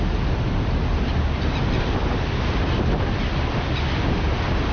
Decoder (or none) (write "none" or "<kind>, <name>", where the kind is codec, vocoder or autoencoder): none